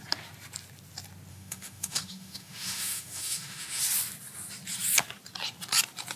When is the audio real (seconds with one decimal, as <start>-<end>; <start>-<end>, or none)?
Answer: 0.0-1.3; 3.8-6.2